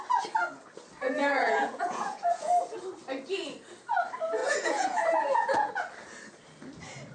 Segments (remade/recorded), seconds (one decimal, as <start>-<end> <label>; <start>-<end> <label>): 0.0-1.2 recorded; 1.2-2.5 remade; 2.5-4.4 recorded; 4.4-5.7 remade; 5.7-7.1 recorded